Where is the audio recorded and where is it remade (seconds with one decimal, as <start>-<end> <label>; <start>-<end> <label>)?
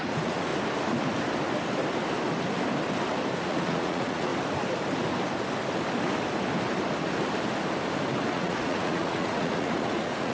0.0-0.5 remade; 0.5-3.4 recorded; 3.4-4.3 remade; 4.3-8.3 recorded; 8.3-10.3 remade